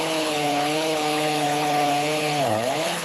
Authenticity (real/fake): fake